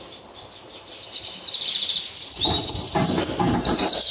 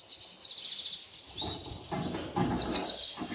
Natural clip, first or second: second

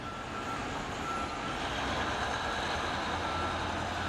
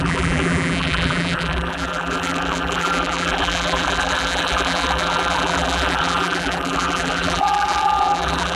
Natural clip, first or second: first